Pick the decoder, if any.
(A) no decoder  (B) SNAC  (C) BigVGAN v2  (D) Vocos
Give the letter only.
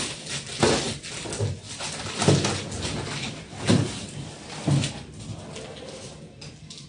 A